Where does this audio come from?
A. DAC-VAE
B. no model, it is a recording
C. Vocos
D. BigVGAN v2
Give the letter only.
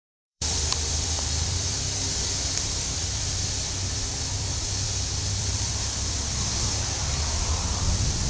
D